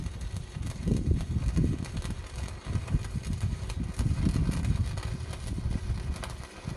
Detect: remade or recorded recorded